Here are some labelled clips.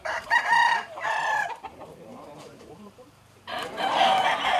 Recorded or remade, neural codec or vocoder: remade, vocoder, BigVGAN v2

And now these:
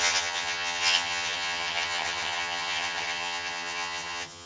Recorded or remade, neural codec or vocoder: remade, vocoder, HiFi-GAN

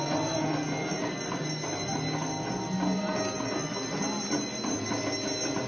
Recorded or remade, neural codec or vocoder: recorded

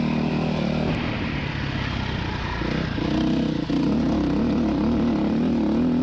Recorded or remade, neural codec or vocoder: recorded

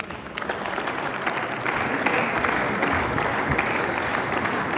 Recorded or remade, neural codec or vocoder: recorded